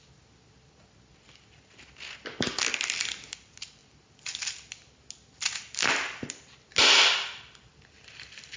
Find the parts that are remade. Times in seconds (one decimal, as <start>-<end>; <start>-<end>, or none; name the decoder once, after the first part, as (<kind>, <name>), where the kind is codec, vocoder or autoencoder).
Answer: none